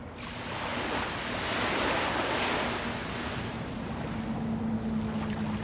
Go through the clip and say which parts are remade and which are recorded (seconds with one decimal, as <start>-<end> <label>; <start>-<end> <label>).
0.0-5.6 recorded